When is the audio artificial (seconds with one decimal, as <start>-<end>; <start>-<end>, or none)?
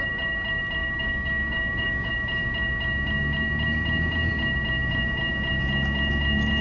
0.8-2.1